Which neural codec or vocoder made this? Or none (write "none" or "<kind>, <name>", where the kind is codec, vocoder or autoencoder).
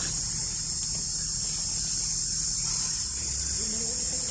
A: none